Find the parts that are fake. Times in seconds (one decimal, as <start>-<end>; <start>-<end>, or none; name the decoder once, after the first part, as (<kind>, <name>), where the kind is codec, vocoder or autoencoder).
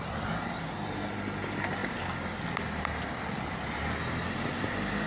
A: none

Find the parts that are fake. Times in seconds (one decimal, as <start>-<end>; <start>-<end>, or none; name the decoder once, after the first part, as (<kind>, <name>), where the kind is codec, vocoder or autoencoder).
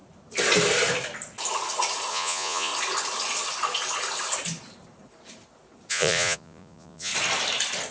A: 2.1-2.7 (vocoder, Vocos); 5.9-7.1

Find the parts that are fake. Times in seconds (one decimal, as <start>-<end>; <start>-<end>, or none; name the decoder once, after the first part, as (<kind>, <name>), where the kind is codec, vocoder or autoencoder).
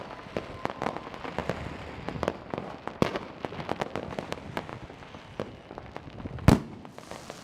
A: none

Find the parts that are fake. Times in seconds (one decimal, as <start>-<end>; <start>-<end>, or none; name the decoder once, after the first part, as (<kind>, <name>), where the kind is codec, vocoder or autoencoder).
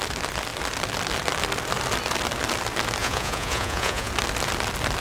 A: 3.0-4.1 (vocoder, Vocos)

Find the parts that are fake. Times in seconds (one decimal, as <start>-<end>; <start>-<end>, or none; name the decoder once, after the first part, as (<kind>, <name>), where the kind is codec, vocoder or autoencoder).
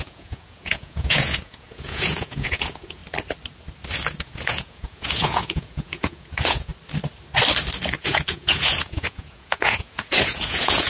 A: 0.0-3.0 (vocoder, Vocos); 4.2-6.7; 8.0-10.9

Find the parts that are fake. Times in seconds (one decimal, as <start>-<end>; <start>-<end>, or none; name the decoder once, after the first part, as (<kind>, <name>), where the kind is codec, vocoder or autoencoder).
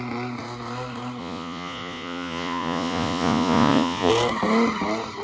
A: 1.2-4.1 (vocoder, Vocos)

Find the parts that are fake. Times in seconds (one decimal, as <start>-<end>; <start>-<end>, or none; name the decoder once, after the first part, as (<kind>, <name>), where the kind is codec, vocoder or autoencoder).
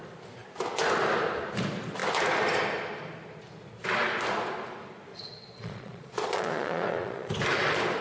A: 5.1-7.3 (vocoder, Vocos)